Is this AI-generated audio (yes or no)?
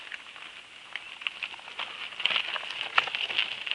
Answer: no